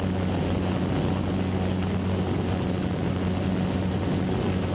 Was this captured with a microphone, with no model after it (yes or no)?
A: yes